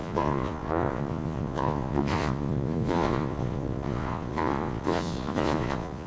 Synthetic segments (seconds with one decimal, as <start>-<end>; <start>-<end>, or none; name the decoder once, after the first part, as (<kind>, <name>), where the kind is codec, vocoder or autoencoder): 0.0-6.1 (vocoder, Vocos)